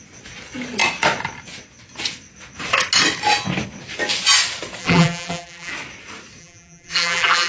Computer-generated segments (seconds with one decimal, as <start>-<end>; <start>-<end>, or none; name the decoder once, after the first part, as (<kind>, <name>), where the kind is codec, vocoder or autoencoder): 4.8-5.7 (vocoder, BigVGAN v2); 6.4-7.5